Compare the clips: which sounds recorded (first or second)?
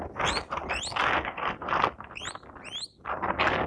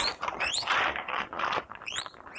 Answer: first